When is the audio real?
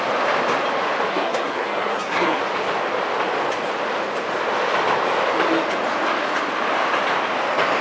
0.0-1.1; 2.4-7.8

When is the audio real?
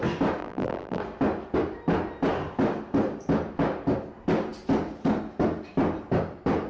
0.0-0.4; 1.0-6.7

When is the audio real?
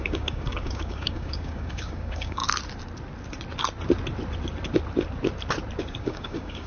2.4-5.8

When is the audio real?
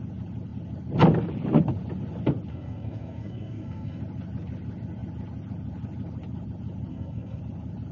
0.0-2.5; 4.0-6.9; 7.4-7.9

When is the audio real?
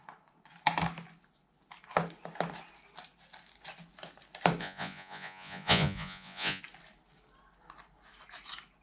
0.0-4.6; 6.6-8.8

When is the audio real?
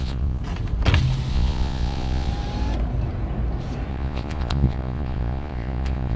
0.4-1.3; 2.3-3.9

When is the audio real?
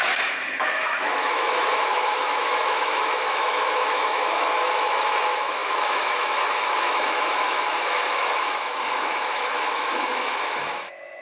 none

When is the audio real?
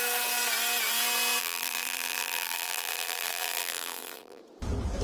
0.0-1.4; 4.4-5.0